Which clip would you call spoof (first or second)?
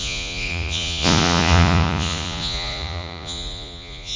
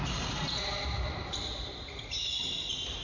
first